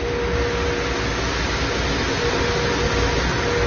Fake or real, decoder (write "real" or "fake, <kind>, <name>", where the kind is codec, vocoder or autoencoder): real